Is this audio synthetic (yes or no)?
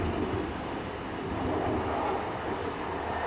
no